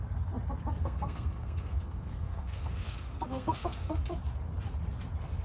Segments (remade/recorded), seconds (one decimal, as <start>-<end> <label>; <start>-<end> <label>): 0.0-0.8 recorded; 0.8-4.0 remade; 4.0-5.4 recorded